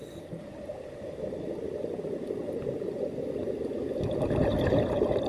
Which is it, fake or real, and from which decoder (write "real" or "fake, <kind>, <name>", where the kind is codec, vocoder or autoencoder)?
real